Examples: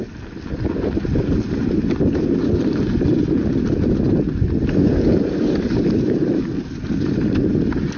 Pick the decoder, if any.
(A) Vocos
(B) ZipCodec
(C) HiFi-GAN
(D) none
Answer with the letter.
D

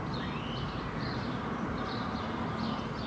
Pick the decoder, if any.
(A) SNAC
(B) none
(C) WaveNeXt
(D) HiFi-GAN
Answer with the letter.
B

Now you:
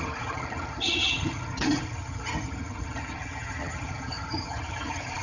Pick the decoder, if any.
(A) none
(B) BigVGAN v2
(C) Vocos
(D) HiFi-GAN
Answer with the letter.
D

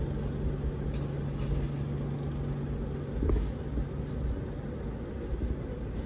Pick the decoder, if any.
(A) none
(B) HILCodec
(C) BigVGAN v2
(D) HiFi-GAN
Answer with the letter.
A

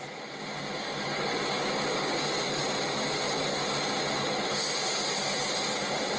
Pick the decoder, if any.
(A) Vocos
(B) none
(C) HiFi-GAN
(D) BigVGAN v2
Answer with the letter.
B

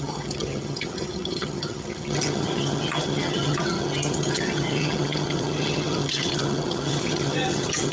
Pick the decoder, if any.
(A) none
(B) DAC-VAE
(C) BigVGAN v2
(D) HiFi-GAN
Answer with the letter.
D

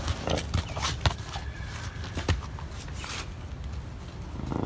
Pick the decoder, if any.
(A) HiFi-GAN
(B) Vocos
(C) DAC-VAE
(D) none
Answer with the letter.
D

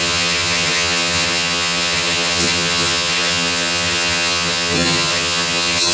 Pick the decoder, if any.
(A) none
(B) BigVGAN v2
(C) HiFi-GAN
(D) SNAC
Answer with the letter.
C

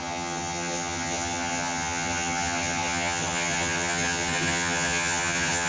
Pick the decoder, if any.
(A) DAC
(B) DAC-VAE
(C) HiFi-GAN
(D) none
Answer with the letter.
C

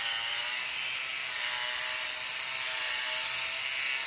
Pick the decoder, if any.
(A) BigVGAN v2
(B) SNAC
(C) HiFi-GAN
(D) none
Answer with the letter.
D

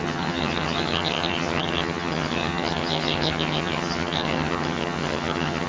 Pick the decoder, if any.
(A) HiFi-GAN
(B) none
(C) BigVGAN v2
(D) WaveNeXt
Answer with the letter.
A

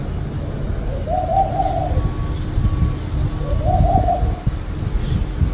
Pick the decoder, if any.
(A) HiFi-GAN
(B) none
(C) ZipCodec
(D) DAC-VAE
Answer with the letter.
B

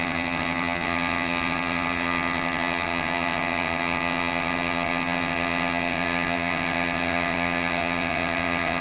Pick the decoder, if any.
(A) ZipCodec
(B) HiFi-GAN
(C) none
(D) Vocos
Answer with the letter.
B